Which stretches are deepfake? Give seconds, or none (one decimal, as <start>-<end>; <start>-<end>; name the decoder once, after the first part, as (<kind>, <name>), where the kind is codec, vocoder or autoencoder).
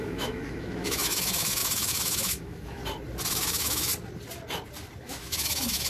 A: 0.0-2.8 (autoencoder, DAC-VAE); 3.3-3.9; 5.0-5.9